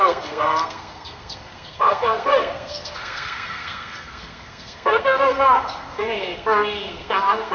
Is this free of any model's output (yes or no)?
no